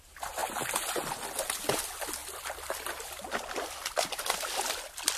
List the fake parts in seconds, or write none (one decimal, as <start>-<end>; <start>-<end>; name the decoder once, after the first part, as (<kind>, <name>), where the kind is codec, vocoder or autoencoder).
none